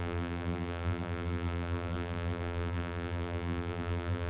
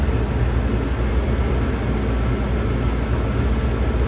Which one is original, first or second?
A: second